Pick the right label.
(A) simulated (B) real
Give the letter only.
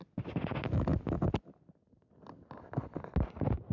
B